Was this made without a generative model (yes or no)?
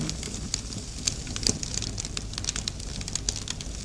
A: yes